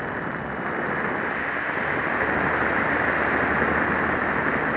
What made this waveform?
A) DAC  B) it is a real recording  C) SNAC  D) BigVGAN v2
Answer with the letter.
B